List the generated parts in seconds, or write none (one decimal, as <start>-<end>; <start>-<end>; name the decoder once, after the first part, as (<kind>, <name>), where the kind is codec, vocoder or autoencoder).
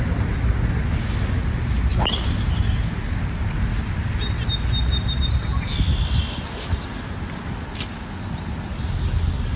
none